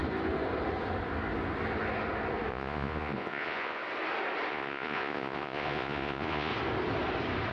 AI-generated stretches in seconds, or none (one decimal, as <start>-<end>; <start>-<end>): 2.5-3.8; 4.5-6.5